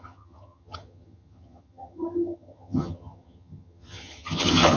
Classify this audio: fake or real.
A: fake